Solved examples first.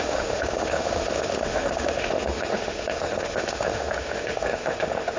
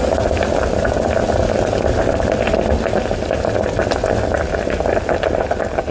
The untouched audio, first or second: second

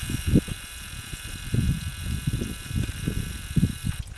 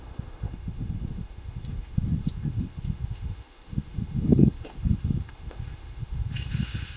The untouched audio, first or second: first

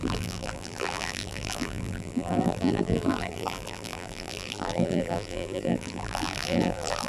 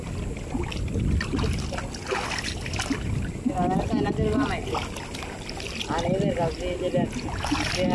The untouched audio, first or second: second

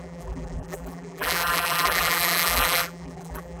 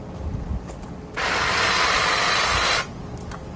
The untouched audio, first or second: second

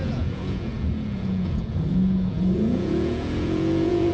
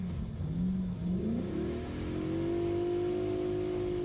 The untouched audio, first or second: second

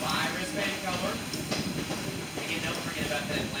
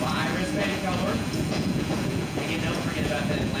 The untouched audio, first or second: first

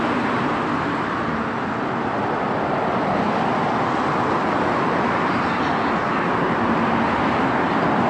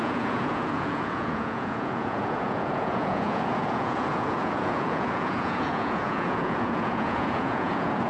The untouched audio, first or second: first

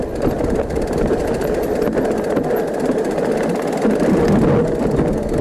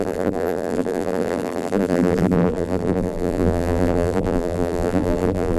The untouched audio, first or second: first